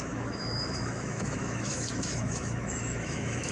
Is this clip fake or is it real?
fake